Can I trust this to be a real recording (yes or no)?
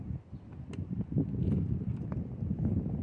yes